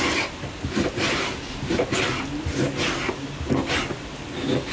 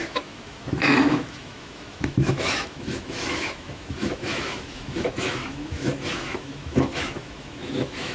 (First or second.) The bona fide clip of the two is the first